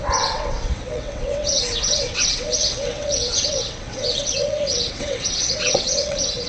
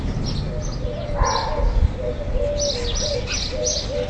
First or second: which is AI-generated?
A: first